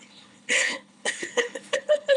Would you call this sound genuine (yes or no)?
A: no